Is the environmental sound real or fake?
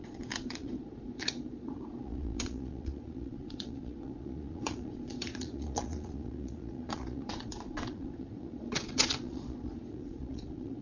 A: fake